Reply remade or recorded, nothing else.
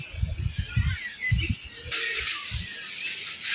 recorded